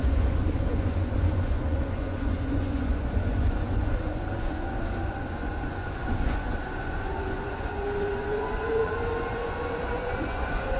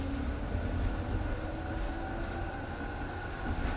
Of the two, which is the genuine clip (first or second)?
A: second